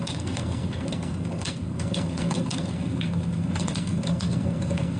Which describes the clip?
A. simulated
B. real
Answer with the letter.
A